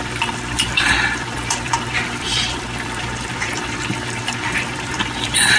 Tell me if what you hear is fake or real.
fake